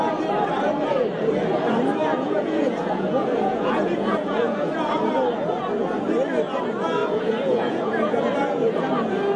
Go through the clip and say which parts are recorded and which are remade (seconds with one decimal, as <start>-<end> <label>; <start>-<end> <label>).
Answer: 0.0-2.1 recorded; 2.1-4.7 remade; 4.7-7.0 recorded; 7.0-8.2 remade; 8.2-9.4 recorded